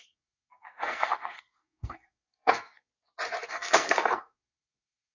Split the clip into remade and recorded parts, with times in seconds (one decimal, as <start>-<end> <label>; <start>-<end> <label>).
0.0-2.9 remade; 2.9-3.5 recorded; 3.5-5.1 remade